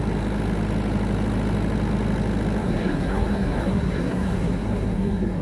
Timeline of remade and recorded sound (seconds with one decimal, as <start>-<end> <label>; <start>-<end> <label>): 0.0-2.6 recorded; 2.6-5.4 remade